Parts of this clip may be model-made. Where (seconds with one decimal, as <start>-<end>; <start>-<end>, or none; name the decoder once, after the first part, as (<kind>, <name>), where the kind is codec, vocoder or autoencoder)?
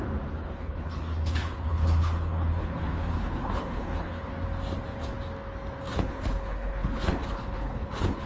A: 0.4-4.3 (codec, HILCodec); 5.9-8.3